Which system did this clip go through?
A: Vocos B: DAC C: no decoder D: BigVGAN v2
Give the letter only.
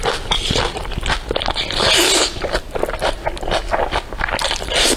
C